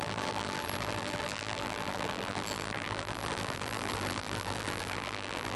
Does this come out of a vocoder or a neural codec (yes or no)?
yes